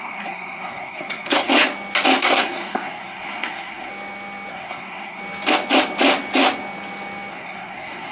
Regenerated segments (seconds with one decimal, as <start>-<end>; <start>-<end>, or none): 0.0-1.5; 2.2-3.9; 4.5-5.2; 7.3-8.1